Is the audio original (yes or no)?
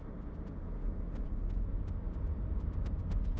yes